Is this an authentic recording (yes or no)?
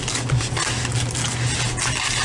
yes